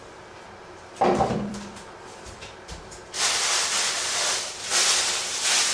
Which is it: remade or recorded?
remade